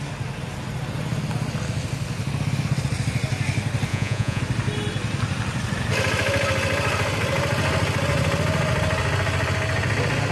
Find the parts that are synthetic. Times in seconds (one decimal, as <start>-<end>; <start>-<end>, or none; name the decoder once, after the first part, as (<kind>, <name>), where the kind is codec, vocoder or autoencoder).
3.9-4.4 (vocoder, Vocos)